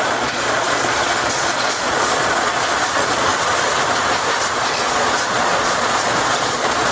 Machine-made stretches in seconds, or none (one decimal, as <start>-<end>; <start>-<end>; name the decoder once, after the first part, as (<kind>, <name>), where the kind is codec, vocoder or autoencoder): 0.0-3.3 (vocoder, Vocos); 4.6-6.9